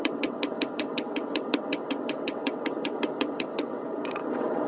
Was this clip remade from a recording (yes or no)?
yes